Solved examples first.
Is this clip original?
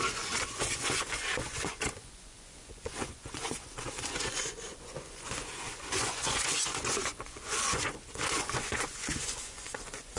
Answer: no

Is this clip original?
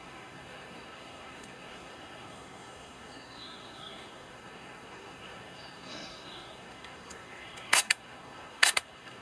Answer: no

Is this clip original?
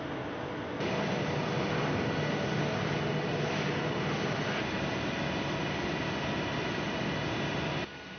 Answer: yes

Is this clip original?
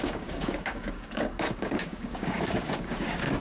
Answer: no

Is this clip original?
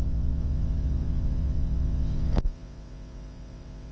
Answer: no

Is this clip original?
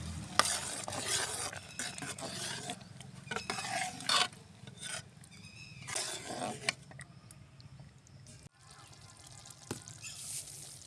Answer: yes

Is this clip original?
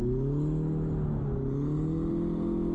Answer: yes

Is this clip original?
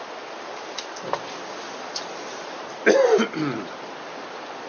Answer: no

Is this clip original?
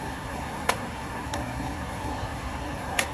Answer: no